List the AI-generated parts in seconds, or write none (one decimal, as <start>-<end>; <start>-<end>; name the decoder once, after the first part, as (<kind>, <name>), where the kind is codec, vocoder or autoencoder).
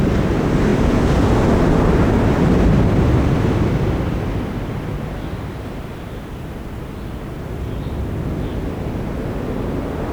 none